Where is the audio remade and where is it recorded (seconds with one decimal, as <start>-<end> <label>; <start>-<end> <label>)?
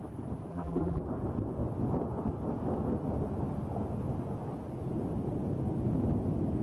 0.0-0.5 recorded; 0.5-1.0 remade; 1.0-6.6 recorded